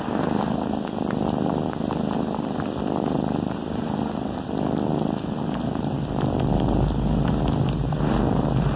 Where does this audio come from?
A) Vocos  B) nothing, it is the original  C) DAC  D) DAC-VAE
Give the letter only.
B